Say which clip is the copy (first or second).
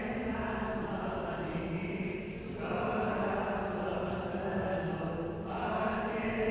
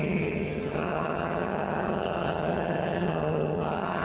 second